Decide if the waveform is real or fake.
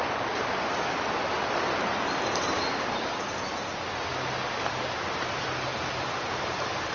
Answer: real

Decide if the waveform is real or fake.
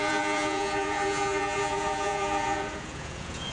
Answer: fake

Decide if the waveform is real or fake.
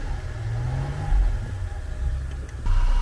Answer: real